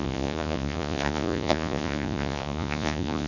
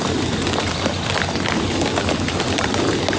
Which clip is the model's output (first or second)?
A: first